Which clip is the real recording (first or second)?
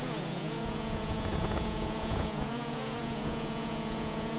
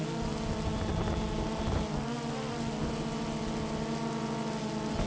second